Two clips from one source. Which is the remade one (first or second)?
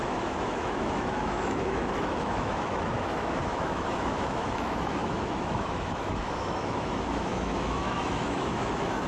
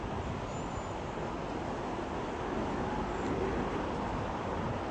first